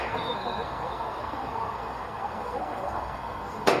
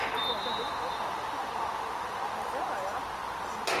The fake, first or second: first